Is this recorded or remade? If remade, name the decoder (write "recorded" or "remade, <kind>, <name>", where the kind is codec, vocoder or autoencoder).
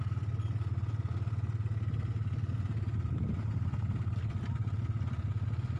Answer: recorded